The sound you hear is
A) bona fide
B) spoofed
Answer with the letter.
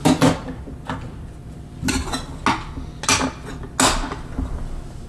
A